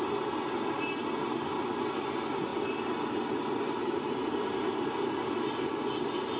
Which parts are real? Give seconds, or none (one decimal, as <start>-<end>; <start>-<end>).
0.0-6.4